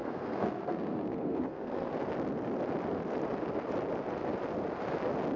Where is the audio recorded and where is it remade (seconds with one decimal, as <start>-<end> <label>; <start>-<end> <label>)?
0.0-1.9 remade; 1.9-5.4 recorded